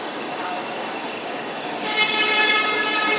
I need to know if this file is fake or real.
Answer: fake